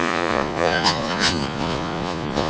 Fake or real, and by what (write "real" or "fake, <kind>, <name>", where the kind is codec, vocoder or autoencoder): fake, vocoder, Vocos